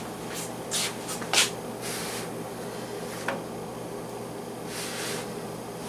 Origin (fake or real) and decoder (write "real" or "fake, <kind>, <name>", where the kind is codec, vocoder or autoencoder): real